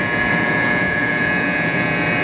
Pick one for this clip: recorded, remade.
remade